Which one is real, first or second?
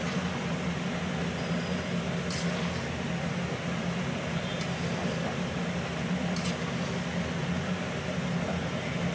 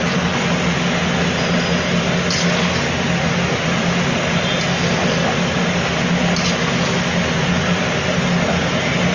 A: second